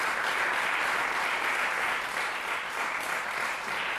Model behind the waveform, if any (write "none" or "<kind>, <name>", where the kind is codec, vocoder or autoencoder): none